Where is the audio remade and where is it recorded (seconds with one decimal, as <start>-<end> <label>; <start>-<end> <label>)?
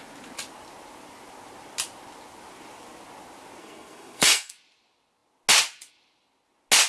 0.0-3.6 recorded; 3.6-4.5 remade; 4.5-6.9 recorded